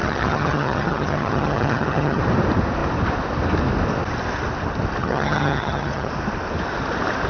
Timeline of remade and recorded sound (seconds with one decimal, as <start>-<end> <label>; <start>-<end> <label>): 0.0-2.2 remade; 2.2-5.0 recorded; 5.0-6.1 remade; 6.1-7.3 recorded